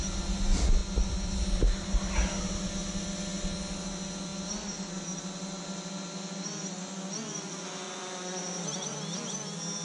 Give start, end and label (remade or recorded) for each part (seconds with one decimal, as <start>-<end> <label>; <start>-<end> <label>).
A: 0.0-9.8 recorded

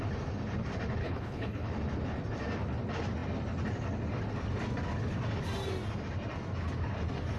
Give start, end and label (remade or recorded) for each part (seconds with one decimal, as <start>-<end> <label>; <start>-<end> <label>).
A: 0.0-1.0 recorded; 1.0-1.7 remade; 1.7-7.4 recorded

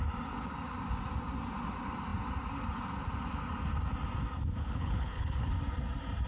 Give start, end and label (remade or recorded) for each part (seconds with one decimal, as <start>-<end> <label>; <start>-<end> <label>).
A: 0.0-4.6 recorded; 4.6-5.5 remade; 5.5-6.3 recorded

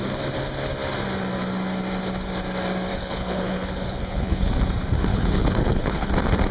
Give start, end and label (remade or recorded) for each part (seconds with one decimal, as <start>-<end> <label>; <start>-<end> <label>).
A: 0.0-2.9 recorded; 2.9-4.5 remade; 4.5-5.1 recorded; 5.1-6.1 remade; 6.1-6.5 recorded